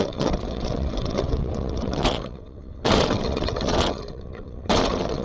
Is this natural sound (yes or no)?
no